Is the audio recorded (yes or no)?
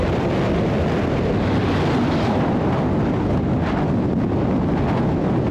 yes